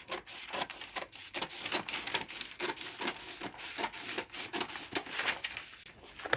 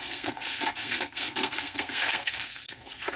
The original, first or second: first